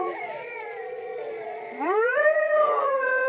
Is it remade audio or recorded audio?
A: remade